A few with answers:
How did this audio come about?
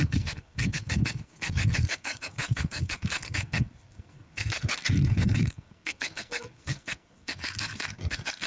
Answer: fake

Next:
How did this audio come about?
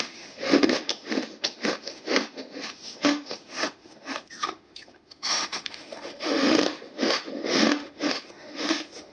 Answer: fake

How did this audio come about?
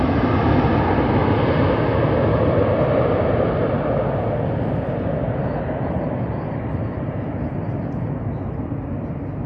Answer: real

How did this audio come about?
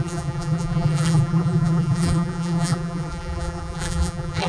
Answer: fake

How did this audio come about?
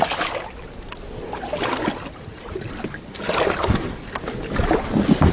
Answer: real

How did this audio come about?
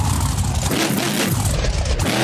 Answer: real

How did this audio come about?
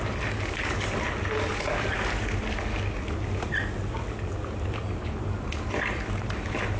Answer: real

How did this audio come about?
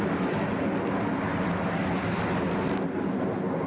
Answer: real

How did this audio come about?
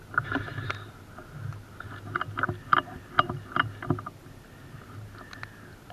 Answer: real